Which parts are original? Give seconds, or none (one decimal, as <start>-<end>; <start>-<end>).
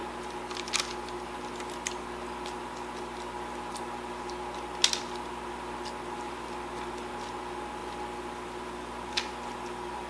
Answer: 0.0-10.1